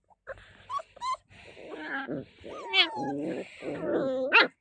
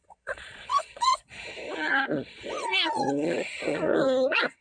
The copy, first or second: second